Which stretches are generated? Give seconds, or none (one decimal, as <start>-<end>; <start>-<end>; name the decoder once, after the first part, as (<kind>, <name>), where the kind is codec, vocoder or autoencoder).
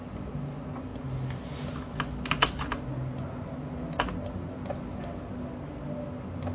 none